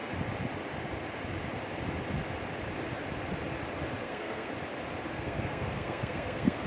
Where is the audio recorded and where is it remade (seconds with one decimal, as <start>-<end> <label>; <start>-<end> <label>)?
0.0-4.0 recorded; 4.0-4.5 remade; 4.5-5.1 recorded; 5.1-6.7 remade